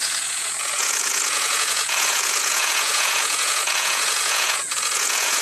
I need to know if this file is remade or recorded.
remade